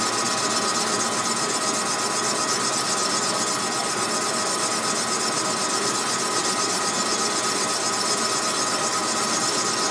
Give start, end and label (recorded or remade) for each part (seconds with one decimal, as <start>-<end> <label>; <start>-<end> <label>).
0.0-3.8 recorded; 3.8-4.7 remade; 4.7-9.9 recorded